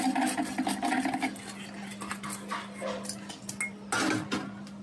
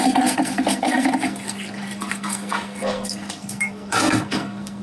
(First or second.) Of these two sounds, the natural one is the first